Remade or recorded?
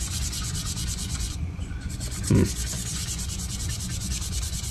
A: remade